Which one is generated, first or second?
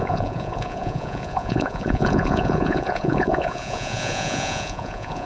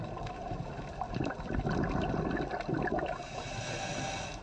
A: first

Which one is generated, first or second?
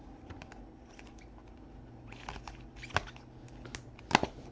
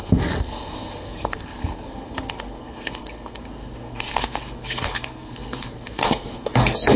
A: second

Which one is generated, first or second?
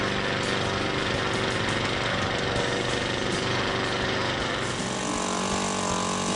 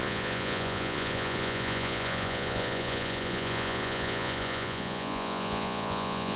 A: second